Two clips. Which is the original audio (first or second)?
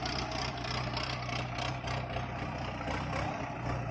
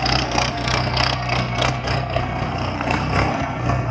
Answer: first